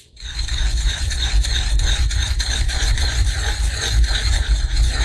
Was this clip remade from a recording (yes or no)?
yes